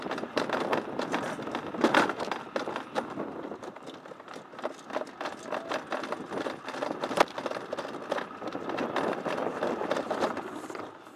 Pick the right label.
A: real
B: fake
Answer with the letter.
A